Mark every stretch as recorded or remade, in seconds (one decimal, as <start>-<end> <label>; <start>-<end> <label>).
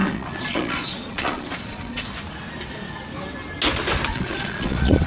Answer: 0.0-2.1 remade; 2.1-4.1 recorded; 4.1-5.1 remade